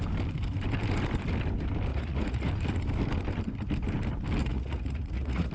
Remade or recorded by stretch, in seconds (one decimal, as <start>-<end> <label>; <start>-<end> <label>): 0.0-1.9 recorded; 1.9-2.5 remade; 2.5-4.4 recorded; 4.4-5.5 remade